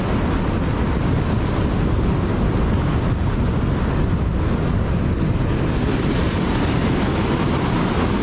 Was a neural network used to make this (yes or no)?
no